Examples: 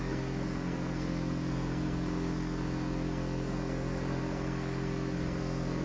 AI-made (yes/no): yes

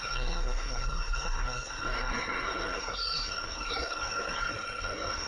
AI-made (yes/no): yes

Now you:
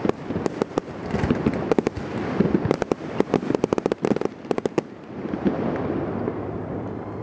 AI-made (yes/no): yes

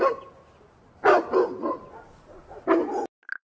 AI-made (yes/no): no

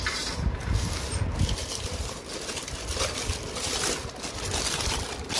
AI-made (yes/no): no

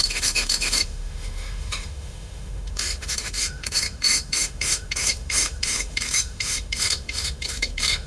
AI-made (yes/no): yes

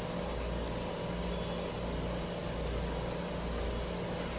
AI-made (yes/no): no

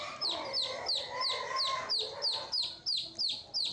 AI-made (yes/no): no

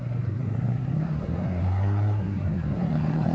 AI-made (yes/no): yes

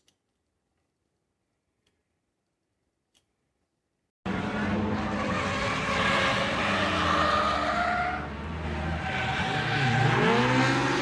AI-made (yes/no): no